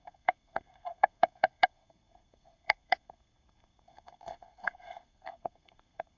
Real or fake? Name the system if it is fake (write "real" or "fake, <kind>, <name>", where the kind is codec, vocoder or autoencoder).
fake, codec, SNAC